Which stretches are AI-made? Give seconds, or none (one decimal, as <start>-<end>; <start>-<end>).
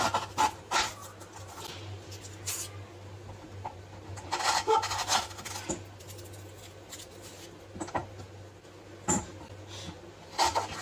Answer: none